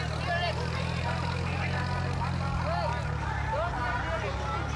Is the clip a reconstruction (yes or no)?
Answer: no